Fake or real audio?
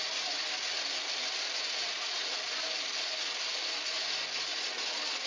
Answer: real